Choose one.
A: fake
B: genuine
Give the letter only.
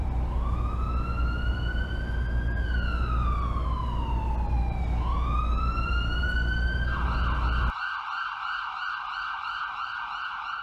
B